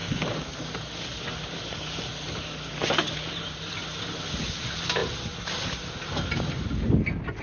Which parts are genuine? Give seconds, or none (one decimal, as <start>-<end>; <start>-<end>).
0.0-7.4